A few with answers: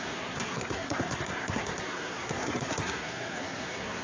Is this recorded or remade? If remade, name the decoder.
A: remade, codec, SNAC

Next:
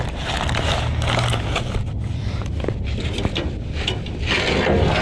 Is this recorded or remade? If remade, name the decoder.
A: recorded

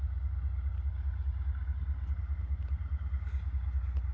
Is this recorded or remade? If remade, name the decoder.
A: recorded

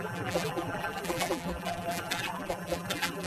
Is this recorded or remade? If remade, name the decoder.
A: remade, vocoder, BigVGAN v2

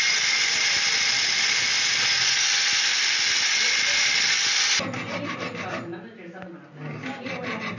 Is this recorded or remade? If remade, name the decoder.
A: recorded